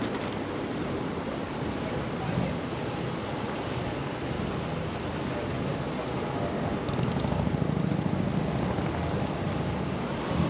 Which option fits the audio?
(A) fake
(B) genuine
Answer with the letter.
B